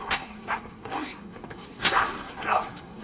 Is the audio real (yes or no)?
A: no